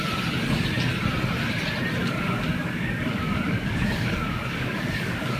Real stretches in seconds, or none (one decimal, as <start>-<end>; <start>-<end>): 0.0-2.0